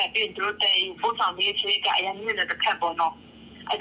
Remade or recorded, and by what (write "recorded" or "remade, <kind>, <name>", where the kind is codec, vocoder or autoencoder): remade, vocoder, Vocos